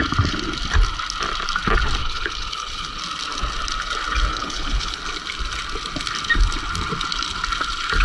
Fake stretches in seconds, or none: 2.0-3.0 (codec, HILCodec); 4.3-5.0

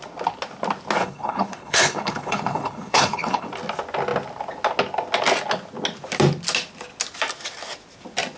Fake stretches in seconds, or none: 1.0-3.5 (codec, HILCodec)